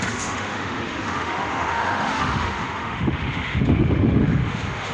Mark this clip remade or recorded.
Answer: remade